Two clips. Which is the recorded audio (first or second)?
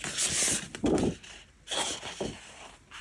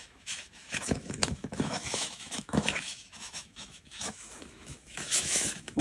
first